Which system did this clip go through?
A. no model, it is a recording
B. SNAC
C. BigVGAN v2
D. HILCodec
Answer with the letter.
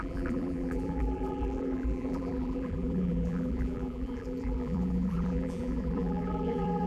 C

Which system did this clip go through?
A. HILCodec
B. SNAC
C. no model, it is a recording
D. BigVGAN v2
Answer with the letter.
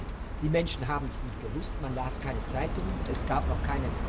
C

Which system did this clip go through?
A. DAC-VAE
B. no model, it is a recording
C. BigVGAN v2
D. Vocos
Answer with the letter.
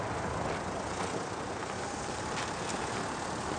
B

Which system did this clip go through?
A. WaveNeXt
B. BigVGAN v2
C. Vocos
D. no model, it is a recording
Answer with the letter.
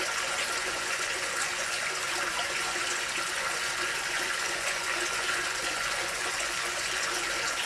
C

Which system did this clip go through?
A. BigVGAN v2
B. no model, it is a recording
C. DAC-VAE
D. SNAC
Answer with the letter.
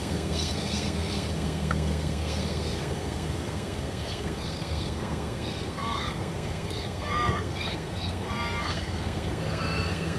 D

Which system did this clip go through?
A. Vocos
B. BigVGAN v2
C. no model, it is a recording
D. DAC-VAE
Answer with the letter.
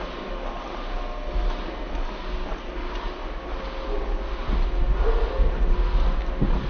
C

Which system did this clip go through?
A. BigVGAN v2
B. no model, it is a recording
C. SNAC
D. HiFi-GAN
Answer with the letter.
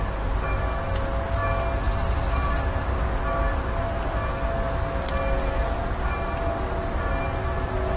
B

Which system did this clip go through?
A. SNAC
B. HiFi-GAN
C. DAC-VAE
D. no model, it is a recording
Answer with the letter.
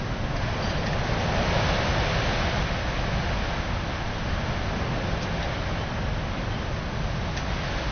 D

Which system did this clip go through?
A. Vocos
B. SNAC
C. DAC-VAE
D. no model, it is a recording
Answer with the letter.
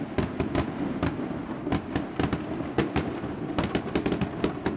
D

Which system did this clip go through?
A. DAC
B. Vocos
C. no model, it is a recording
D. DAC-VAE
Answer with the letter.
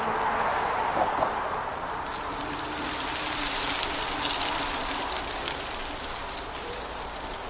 C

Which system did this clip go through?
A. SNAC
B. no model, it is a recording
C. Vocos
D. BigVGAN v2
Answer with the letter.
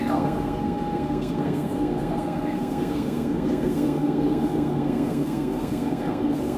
A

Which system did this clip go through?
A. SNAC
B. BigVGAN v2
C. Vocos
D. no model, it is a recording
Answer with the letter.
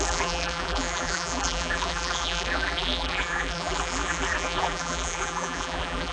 B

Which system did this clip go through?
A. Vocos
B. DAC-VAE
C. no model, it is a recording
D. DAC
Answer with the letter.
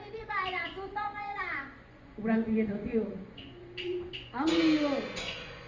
A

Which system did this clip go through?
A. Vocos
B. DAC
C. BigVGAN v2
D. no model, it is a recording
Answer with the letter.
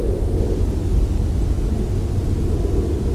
D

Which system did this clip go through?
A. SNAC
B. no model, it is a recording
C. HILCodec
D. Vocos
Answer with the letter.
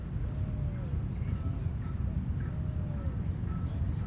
B